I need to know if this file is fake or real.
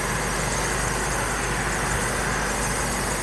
real